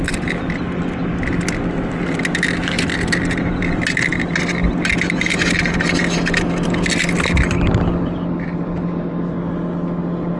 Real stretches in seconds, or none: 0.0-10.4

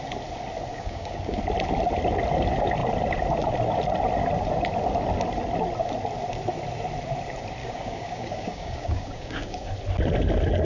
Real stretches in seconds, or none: 0.0-0.7; 1.4-7.6; 9.7-10.6

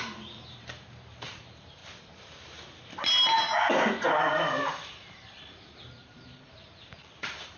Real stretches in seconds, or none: 1.8-4.2

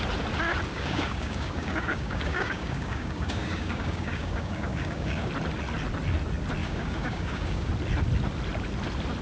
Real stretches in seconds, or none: 0.0-0.7; 5.3-6.6; 7.7-9.2

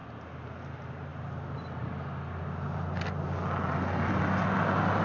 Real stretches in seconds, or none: 0.0-5.0

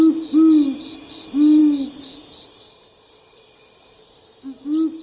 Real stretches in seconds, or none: 0.0-5.0